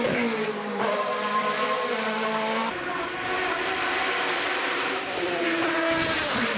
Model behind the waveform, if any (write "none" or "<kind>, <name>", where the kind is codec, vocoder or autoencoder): vocoder, BigVGAN v2